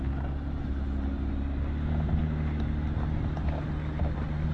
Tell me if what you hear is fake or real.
real